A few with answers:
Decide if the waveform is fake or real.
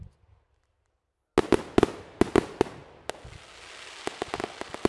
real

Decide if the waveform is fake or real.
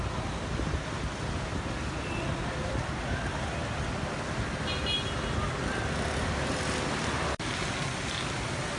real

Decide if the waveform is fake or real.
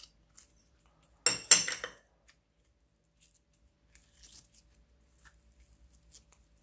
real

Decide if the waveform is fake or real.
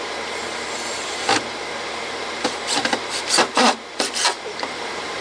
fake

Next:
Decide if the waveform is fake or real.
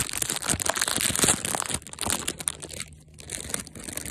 real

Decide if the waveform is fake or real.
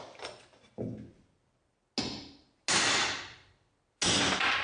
real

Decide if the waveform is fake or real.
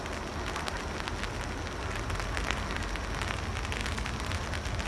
real